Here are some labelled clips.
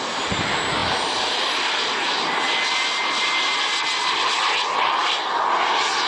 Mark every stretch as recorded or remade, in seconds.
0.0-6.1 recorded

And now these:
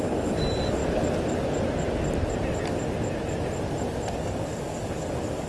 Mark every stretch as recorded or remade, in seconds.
0.0-0.8 remade; 0.8-4.1 recorded; 4.1-5.5 remade